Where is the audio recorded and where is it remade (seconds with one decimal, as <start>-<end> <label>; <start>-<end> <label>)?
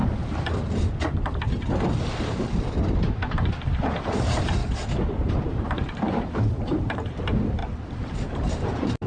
0.0-2.3 recorded; 2.3-4.6 remade; 4.6-5.3 recorded; 5.3-7.6 remade; 7.6-8.1 recorded; 8.1-9.1 remade